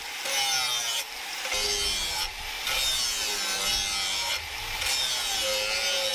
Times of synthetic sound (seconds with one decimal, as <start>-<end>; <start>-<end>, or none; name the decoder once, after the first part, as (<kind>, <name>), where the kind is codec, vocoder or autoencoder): none